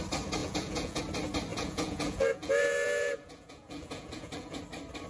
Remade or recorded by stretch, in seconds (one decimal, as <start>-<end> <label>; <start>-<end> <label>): 0.0-0.4 recorded; 0.4-1.0 remade; 1.0-1.5 recorded; 1.5-4.6 remade; 4.6-5.1 recorded